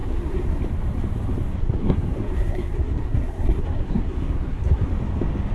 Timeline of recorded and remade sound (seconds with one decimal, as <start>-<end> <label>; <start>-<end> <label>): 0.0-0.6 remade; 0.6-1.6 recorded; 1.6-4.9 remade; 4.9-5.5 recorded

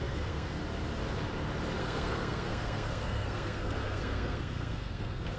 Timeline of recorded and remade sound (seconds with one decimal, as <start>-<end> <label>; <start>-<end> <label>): 0.0-0.6 remade; 0.6-1.8 recorded; 1.8-5.4 remade

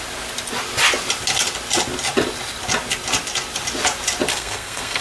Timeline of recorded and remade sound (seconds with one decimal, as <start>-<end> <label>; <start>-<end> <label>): 0.0-4.3 recorded; 4.3-5.0 remade